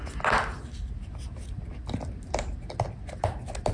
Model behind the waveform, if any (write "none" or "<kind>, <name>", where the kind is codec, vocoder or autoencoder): none